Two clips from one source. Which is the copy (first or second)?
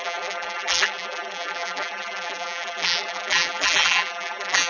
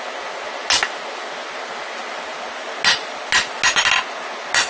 first